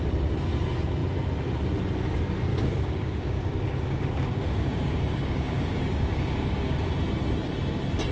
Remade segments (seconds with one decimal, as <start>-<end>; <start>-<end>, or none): 2.5-6.9